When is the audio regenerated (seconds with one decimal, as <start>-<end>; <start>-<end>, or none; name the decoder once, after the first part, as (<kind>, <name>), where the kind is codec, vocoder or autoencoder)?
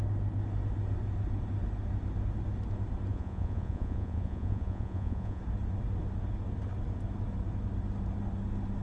3.1-5.4 (vocoder, Vocos)